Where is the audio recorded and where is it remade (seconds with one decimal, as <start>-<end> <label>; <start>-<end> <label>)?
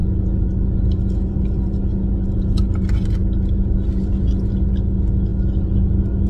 0.0-1.3 remade; 1.3-6.3 recorded